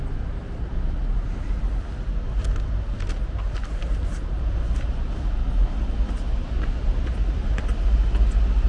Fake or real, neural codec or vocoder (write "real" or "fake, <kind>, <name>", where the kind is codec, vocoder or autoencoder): real